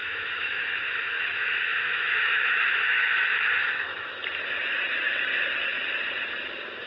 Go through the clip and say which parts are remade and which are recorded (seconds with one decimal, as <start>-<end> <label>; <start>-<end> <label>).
0.0-4.1 remade; 4.1-6.9 recorded